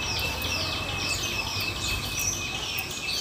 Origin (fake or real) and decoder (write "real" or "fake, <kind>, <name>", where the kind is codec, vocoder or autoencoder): real